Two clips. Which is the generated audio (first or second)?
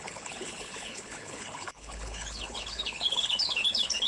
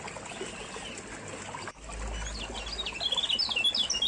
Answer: first